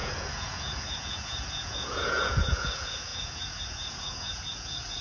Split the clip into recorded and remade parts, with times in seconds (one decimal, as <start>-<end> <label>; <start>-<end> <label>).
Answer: 0.0-5.0 remade